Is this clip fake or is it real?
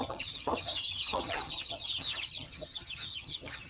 fake